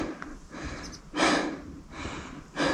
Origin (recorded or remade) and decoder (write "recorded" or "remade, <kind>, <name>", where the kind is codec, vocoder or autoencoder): recorded